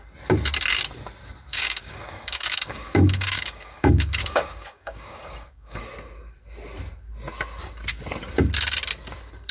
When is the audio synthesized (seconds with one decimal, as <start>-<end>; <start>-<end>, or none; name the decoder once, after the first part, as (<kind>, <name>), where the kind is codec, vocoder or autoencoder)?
1.5-5.8 (codec, DAC)